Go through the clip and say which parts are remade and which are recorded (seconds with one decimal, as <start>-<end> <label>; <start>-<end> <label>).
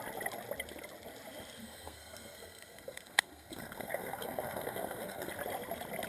0.0-1.6 recorded; 1.6-5.3 remade; 5.3-6.1 recorded